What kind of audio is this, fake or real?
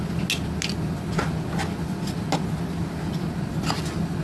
real